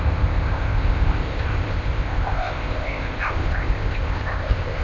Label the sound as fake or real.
fake